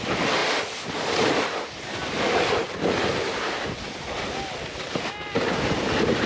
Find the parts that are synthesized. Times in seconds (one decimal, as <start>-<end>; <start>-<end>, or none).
none

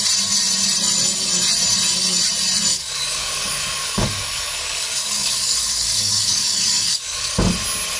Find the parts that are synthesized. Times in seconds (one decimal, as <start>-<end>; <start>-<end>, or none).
2.7-7.3

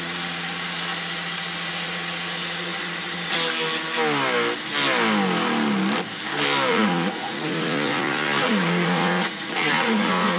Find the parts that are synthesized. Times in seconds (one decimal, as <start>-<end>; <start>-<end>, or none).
0.0-0.9; 1.7-2.7; 6.7-10.4